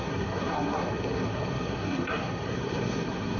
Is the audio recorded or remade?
remade